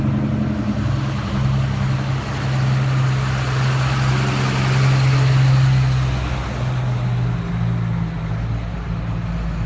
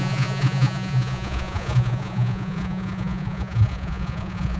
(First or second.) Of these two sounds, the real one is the first